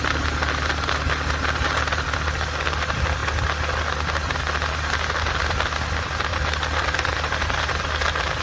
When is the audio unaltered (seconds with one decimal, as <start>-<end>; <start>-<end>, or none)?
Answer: 0.0-6.3; 7.8-8.4